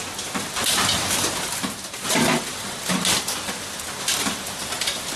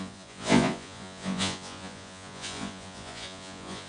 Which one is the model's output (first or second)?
second